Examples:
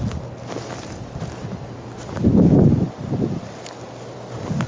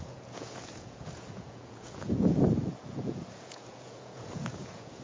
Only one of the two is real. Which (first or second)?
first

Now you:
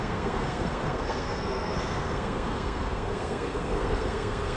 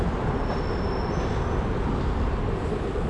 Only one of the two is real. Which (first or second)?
second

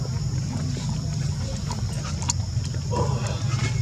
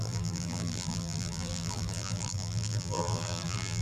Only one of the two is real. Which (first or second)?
first